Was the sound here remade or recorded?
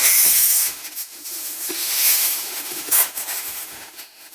remade